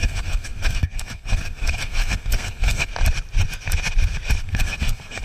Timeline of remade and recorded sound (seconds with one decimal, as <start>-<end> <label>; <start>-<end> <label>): 0.0-2.9 remade; 2.9-4.4 recorded; 4.4-5.2 remade